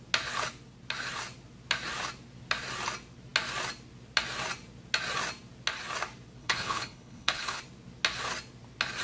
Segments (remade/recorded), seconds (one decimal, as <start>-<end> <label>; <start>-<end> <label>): 0.0-6.4 recorded; 6.4-7.6 remade; 7.6-9.0 recorded